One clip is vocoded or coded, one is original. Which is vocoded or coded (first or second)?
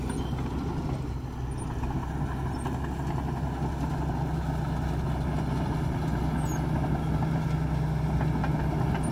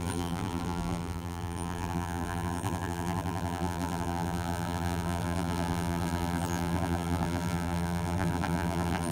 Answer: second